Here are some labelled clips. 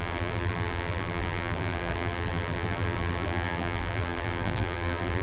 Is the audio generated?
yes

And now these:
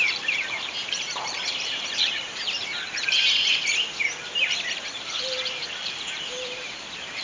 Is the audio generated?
yes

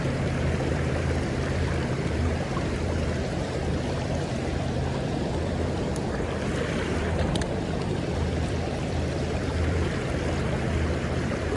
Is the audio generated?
yes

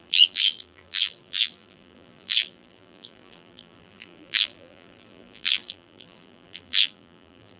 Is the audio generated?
yes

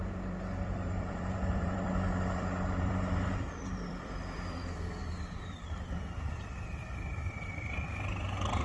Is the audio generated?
yes